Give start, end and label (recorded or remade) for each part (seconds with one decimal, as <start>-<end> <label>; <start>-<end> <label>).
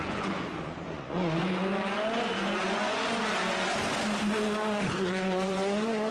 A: 0.0-1.7 remade; 1.7-2.6 recorded; 2.6-3.0 remade; 3.0-4.9 recorded; 4.9-6.1 remade